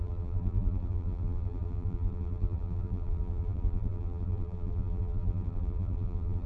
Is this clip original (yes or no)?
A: no